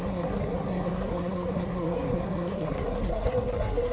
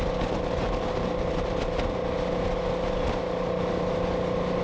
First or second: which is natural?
second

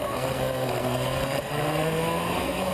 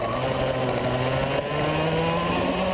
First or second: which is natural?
second